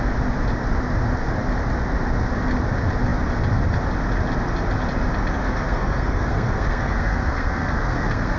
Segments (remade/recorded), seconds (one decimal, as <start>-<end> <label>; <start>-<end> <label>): 0.0-5.4 recorded; 5.4-8.4 remade